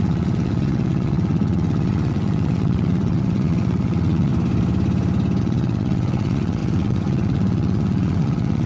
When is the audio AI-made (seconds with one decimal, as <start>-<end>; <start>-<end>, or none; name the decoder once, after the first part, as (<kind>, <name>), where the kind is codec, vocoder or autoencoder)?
0.0-4.3 (vocoder, WaveNeXt); 5.4-8.7

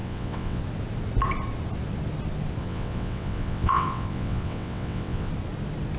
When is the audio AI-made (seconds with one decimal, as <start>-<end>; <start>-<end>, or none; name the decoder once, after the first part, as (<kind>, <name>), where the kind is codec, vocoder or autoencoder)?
0.0-0.6 (vocoder, WaveNeXt); 2.6-5.3